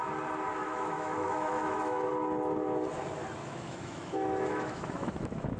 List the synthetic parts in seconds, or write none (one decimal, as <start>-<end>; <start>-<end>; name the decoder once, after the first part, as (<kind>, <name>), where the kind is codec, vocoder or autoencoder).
0.6-2.1 (autoencoder, DAC-VAE); 3.4-5.6